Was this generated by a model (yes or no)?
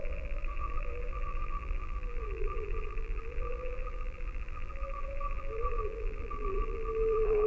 yes